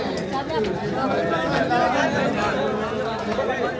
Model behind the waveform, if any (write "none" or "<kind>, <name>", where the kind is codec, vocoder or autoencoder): none